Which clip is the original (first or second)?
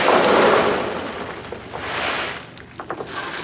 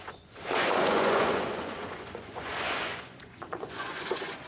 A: first